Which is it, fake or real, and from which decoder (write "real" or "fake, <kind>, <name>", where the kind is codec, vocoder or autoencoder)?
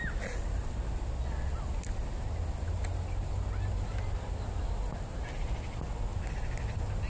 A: real